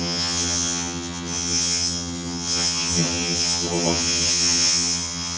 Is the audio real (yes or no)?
no